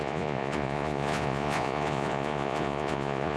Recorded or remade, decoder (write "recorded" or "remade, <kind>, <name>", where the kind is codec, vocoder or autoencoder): remade, vocoder, Vocos